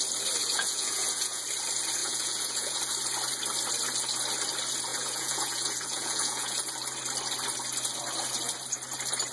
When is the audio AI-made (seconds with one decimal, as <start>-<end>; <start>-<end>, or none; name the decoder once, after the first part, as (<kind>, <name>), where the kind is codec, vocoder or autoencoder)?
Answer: 0.4-1.4 (vocoder, Vocos); 2.0-2.8; 4.9-6.7